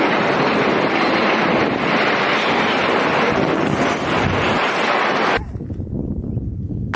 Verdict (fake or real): real